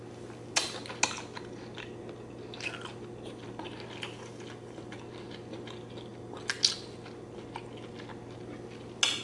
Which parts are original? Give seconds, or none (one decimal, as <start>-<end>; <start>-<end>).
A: 0.0-9.2